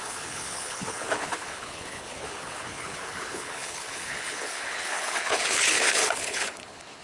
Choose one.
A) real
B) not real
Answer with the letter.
B